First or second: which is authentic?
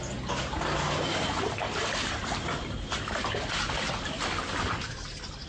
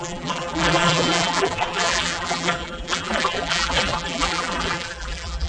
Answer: first